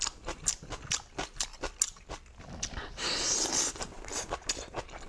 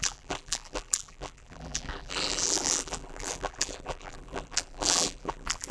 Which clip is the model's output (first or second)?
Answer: second